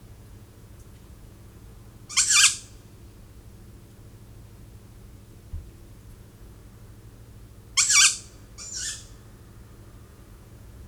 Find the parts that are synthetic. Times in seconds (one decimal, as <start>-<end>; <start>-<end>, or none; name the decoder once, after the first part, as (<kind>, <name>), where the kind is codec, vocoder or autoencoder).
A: 0.0-1.7 (vocoder, Vocos); 6.1-6.6; 10.1-10.9